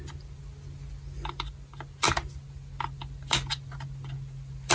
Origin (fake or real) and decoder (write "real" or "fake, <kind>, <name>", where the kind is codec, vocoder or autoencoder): real